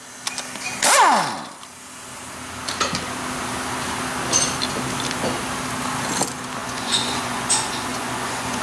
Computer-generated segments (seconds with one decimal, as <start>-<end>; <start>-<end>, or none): 6.6-8.6